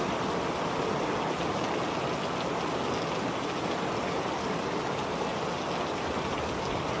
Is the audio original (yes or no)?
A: yes